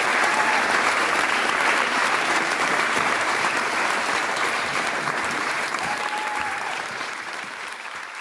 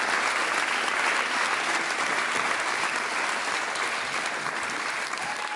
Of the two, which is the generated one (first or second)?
first